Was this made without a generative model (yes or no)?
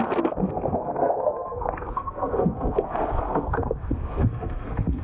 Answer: no